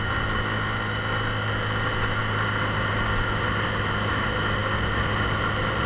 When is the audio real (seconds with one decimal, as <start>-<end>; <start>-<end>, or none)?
0.0-5.9